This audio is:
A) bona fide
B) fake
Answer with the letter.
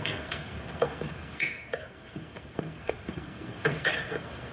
B